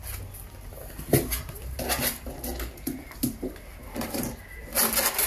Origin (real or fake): real